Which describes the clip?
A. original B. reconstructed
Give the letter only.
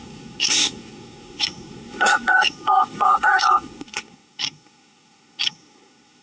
B